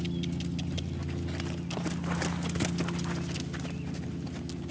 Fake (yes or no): no